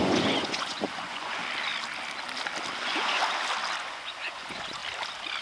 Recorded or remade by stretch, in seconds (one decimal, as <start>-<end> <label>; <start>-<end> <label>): 0.0-1.4 remade; 1.4-2.8 recorded; 2.8-3.2 remade; 3.2-3.8 recorded; 3.8-4.8 remade; 4.8-5.4 recorded